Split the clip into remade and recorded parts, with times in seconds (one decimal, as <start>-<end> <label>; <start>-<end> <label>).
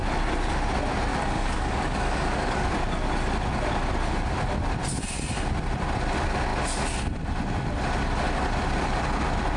0.0-1.1 recorded; 1.1-2.7 remade; 2.7-9.6 recorded